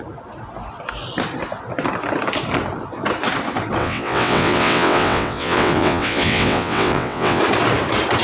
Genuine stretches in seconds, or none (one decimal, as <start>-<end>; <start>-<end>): 0.0-3.8; 7.4-8.2

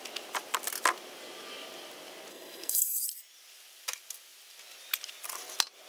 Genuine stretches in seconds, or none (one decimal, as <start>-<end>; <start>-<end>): 0.0-2.3; 3.0-5.9

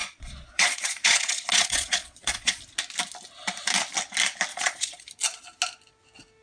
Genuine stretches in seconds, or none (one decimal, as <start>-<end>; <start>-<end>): 2.6-4.5; 5.1-6.4